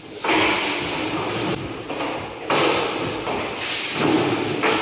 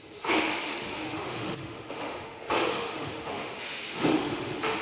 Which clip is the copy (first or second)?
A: second